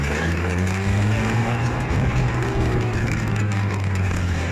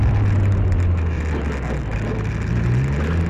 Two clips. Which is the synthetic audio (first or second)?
first